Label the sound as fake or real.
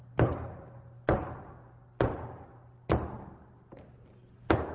real